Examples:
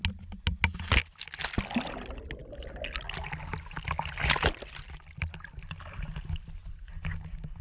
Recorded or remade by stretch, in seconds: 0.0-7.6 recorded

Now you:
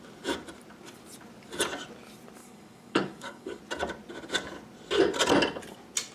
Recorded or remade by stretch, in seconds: 0.0-2.4 recorded; 2.4-3.6 remade; 3.6-6.1 recorded